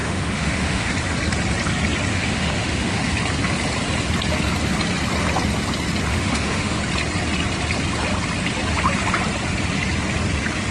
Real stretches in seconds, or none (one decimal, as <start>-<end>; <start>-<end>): 0.9-2.1; 3.1-6.1; 6.8-10.7